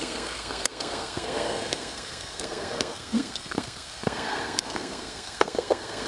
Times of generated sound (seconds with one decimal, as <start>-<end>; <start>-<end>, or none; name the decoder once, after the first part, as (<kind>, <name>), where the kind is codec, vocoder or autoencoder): 0.0-6.1 (codec, SNAC)